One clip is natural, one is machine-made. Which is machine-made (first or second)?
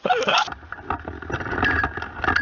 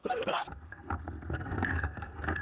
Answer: second